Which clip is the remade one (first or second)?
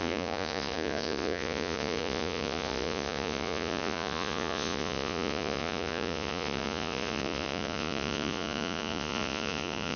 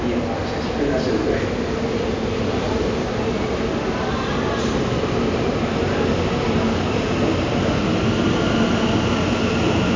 first